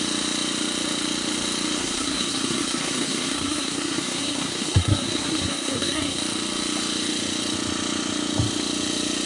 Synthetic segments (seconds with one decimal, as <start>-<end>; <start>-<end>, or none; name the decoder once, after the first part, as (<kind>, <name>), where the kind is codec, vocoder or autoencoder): 1.8-6.2 (codec, SNAC)